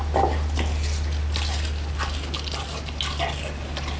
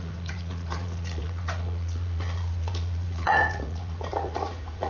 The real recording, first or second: first